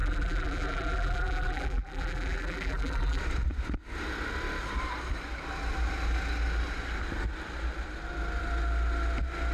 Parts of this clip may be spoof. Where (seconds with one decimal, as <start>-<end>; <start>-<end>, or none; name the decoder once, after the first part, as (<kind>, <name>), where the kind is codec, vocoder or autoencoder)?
0.0-3.2 (vocoder, BigVGAN v2)